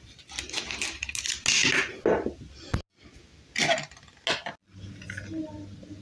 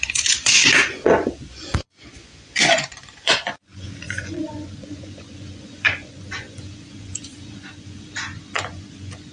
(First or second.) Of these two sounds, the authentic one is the first